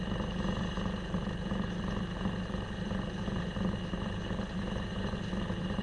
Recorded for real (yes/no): yes